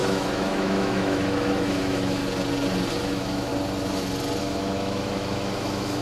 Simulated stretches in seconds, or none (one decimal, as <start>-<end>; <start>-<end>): 0.0-2.2; 3.0-3.5; 4.4-6.0